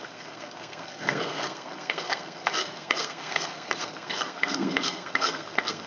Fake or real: fake